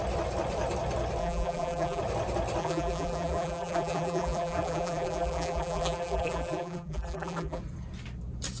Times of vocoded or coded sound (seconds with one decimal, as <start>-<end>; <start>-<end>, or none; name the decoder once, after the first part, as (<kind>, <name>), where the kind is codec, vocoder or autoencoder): 1.2-2.0 (vocoder, BigVGAN v2); 2.6-7.6